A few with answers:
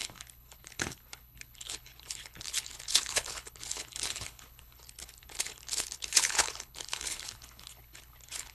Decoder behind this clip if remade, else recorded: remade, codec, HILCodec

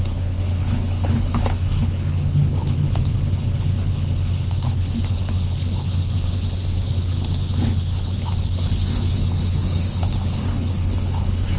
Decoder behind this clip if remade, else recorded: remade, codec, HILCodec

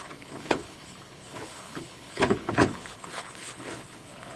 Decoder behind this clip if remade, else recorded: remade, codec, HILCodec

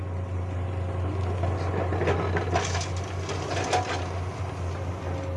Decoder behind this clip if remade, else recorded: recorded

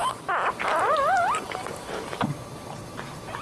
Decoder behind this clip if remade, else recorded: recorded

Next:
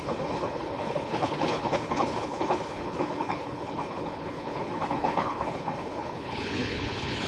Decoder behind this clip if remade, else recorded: remade, codec, HILCodec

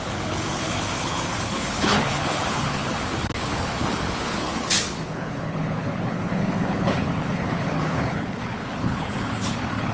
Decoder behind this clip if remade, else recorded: remade, codec, HILCodec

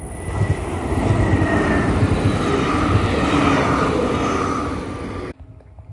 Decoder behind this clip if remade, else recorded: recorded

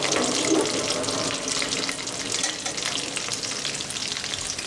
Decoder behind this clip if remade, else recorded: recorded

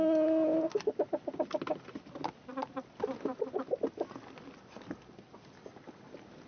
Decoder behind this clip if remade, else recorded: recorded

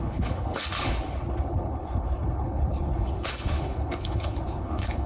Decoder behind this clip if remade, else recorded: remade, codec, HILCodec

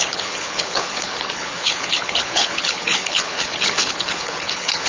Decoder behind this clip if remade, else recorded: remade, codec, HILCodec